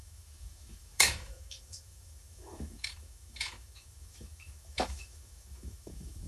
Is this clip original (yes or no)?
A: no